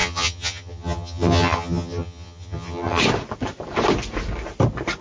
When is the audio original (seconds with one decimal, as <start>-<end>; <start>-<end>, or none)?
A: 3.0-5.0